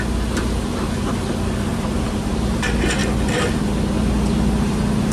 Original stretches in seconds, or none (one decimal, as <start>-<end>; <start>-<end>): 0.0-1.7; 2.6-3.0; 3.6-5.1